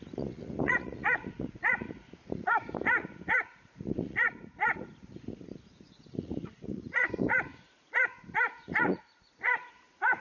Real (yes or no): no